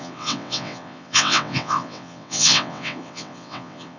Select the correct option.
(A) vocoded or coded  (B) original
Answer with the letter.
A